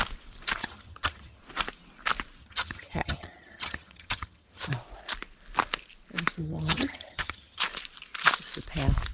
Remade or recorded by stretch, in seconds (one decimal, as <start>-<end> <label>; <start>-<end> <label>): 0.0-0.6 recorded; 0.6-1.4 remade; 1.4-2.4 recorded; 2.4-4.7 remade; 4.7-6.4 recorded; 6.4-7.6 remade; 7.6-9.1 recorded